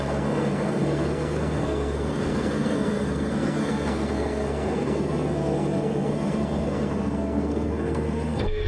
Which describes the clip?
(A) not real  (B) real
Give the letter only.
A